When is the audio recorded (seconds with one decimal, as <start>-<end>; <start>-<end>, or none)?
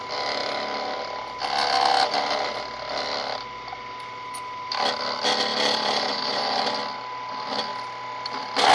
0.0-5.5; 6.7-8.7